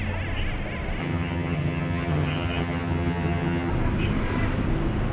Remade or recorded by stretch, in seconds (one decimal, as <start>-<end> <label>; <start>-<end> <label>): 0.0-1.0 recorded; 1.0-3.7 remade; 3.7-5.1 recorded